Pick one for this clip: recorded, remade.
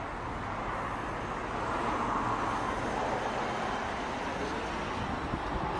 recorded